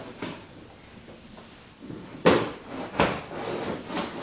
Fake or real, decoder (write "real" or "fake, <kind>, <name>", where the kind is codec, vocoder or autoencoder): fake, vocoder, BigVGAN v2